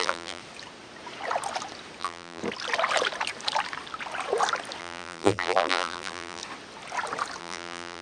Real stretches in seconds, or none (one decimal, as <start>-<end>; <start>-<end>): 0.4-2.0; 2.4-4.8; 6.4-7.4